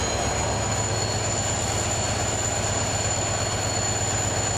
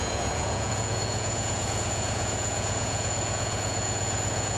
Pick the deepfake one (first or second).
second